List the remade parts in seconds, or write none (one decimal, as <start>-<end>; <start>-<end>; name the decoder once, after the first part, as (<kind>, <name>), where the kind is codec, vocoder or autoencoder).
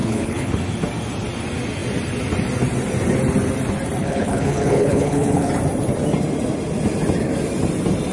0.0-0.6 (codec, HILCodec); 4.0-5.5